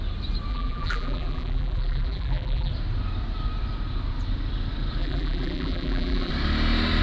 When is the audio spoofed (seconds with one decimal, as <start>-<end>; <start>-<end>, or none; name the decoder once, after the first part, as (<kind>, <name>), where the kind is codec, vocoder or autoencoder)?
0.5-2.7 (vocoder, BigVGAN v2); 5.0-6.3